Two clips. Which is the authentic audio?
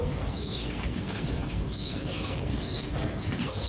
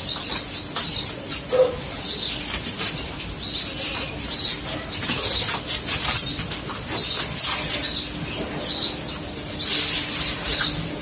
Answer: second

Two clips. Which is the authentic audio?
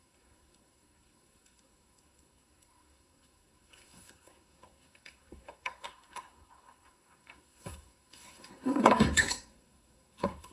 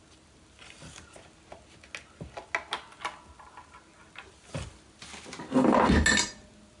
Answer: second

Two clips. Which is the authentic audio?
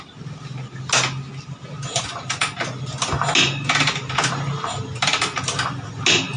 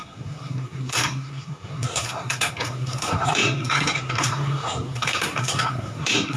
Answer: first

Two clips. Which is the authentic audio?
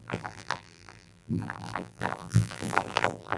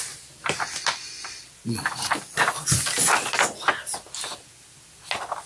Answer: second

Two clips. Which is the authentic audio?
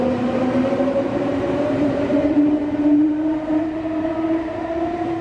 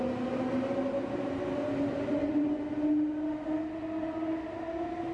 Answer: second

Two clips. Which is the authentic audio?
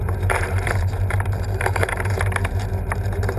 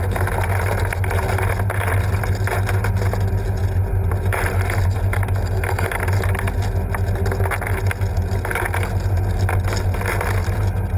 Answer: second